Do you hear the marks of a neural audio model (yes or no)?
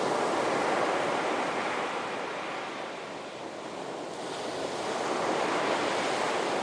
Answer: no